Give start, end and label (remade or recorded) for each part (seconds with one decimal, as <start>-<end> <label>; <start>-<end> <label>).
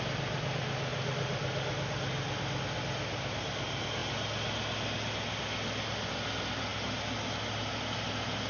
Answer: 0.0-8.5 recorded